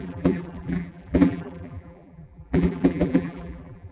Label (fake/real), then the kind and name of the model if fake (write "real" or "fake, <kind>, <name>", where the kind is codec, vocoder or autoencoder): fake, vocoder, BigVGAN v2